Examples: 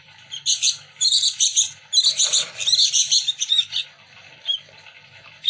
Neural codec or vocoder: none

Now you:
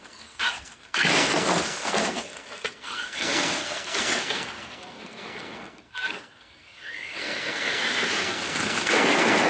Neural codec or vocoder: codec, SNAC